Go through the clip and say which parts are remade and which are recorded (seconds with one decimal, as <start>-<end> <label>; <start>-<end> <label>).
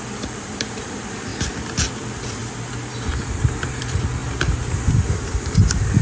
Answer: 0.0-1.3 remade; 1.3-1.9 recorded; 1.9-2.4 remade; 2.4-3.2 recorded; 3.2-4.2 remade; 4.2-4.9 recorded; 4.9-6.0 remade